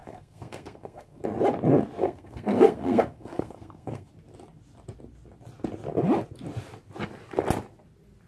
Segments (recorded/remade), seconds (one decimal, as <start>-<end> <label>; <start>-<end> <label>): 0.0-1.2 remade; 1.2-2.0 recorded; 2.0-4.1 remade; 4.1-8.3 recorded